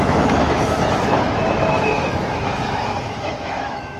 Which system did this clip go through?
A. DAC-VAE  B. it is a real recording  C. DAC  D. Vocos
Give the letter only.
A